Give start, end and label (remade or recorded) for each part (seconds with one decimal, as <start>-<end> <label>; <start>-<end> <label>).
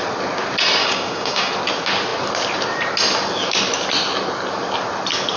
0.0-0.8 recorded; 0.8-1.5 remade; 1.5-5.4 recorded